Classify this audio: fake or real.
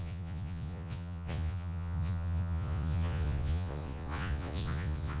fake